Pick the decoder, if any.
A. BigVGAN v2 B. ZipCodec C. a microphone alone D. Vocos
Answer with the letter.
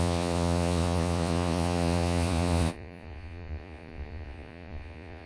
D